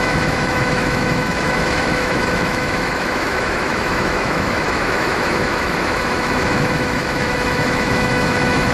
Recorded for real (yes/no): no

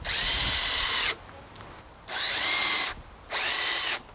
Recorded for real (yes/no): yes